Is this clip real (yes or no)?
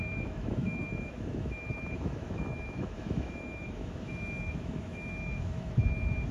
no